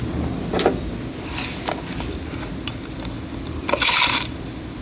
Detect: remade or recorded recorded